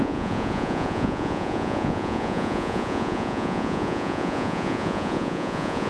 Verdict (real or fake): fake